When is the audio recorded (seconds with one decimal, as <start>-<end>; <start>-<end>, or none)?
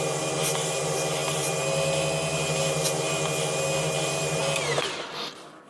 0.0-5.7